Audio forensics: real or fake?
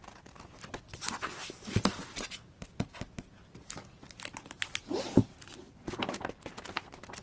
real